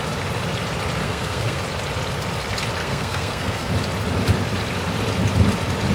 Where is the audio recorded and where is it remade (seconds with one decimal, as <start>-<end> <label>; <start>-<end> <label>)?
0.0-1.0 recorded; 1.0-1.6 remade; 1.6-2.8 recorded; 2.8-3.7 remade; 3.7-5.9 recorded